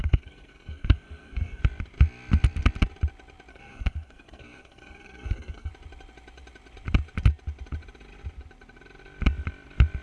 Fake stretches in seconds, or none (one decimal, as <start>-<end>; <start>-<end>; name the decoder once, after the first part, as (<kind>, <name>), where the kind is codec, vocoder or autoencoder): 0.0-1.6 (codec, SNAC); 3.5-5.7